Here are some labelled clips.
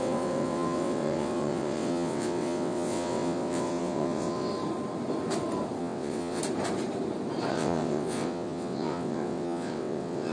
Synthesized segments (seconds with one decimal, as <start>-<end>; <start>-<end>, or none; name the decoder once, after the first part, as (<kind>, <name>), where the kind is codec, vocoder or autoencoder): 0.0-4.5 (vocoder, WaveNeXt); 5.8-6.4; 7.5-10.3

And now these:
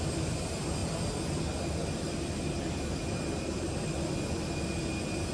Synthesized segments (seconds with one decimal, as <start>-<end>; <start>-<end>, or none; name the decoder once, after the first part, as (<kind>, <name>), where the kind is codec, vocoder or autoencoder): none

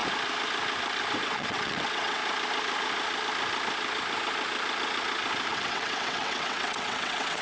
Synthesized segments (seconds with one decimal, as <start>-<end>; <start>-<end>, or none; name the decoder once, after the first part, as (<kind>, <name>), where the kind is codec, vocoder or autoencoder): 1.2-2.2 (vocoder, WaveNeXt); 5.5-7.4